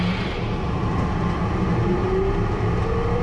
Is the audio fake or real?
real